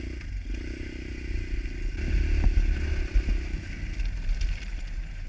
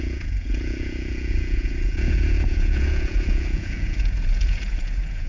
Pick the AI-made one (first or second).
second